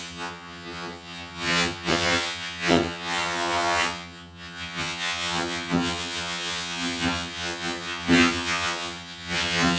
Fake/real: fake